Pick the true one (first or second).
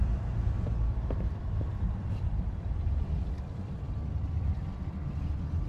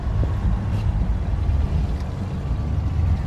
second